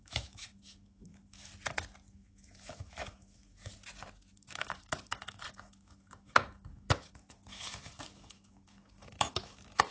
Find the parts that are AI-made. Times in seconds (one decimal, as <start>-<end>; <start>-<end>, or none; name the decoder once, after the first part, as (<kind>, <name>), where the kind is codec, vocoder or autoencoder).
0.0-1.5 (autoencoder, DAC-VAE); 2.1-3.7; 4.3-9.9